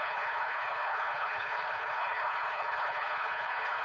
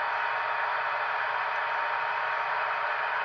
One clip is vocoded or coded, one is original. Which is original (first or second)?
second